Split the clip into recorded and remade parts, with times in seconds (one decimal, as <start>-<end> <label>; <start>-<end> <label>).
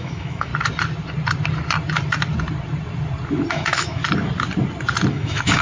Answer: 0.0-0.5 remade; 0.5-3.5 recorded; 3.5-4.0 remade; 4.0-5.1 recorded; 5.1-5.6 remade